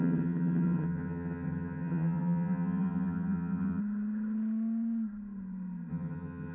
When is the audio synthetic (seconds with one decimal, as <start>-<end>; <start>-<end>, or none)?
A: 0.0-3.8; 5.9-6.5

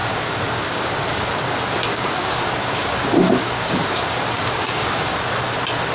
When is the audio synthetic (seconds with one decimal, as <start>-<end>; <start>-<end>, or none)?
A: 0.0-1.0; 1.9-5.3

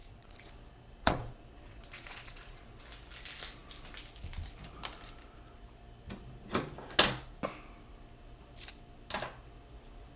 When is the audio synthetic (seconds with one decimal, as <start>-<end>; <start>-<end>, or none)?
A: 0.0-0.5; 1.0-2.8

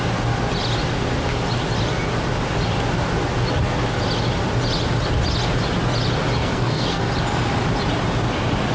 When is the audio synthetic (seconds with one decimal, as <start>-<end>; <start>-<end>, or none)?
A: 6.4-7.1

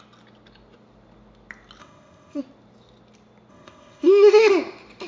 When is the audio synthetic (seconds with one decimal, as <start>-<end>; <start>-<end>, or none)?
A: 1.8-2.4; 3.5-4.5